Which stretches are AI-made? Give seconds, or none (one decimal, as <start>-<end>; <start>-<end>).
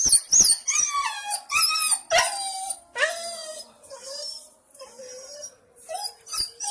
3.4-6.7